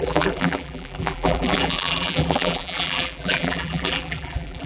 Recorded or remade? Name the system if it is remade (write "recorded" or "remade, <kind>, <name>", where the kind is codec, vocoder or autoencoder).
remade, vocoder, BigVGAN v2